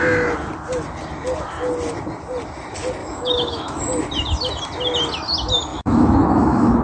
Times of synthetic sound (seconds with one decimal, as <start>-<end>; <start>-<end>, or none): 3.0-3.8; 5.7-6.8